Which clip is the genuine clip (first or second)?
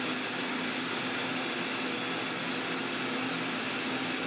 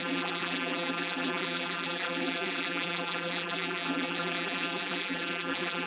first